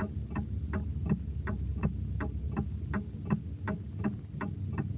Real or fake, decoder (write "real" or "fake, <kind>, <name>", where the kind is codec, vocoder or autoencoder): real